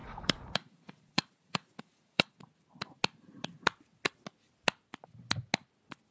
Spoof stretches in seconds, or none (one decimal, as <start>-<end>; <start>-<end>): 0.0-2.4